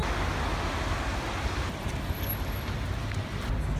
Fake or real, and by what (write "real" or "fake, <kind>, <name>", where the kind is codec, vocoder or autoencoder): real